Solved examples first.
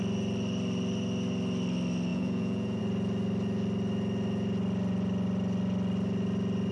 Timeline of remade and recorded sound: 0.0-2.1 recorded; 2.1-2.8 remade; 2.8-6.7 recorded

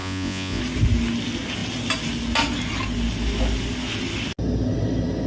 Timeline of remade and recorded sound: 0.0-0.6 remade; 0.6-5.3 recorded

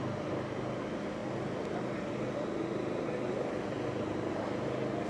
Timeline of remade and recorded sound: 0.0-5.1 recorded

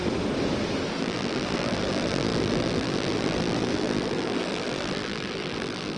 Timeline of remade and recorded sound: 0.0-1.0 recorded; 1.0-6.0 remade